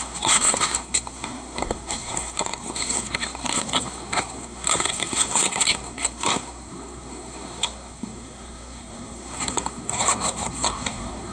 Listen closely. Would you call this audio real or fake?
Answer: fake